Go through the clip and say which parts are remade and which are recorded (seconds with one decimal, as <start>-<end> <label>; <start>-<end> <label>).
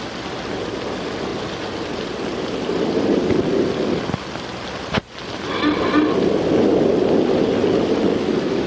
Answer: 0.0-8.1 recorded; 8.1-8.7 remade